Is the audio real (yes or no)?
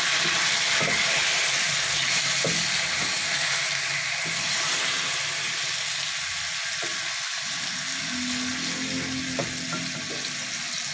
yes